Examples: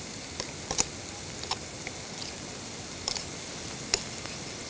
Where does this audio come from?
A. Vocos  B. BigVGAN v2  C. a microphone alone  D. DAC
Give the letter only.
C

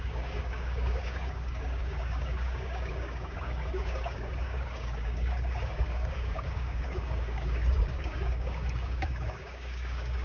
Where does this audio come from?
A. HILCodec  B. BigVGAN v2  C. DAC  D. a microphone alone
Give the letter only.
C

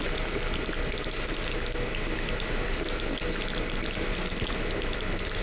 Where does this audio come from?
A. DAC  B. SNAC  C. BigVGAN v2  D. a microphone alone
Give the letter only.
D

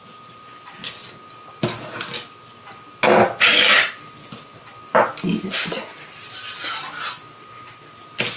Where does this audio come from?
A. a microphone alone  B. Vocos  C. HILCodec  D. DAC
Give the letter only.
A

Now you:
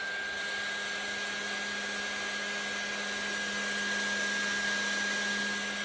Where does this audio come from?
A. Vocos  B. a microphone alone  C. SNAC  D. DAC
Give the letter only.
B